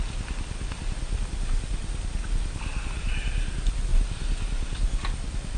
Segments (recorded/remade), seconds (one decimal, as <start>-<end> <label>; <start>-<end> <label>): 0.0-3.9 recorded; 3.9-5.6 remade